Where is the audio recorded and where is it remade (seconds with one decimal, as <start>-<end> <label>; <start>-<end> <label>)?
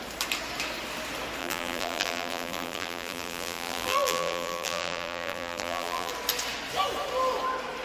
0.0-1.4 recorded; 1.4-6.1 remade; 6.1-7.8 recorded